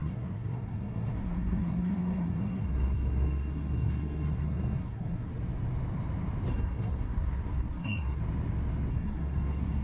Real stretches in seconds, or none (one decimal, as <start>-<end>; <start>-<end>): 5.3-6.5; 8.2-8.9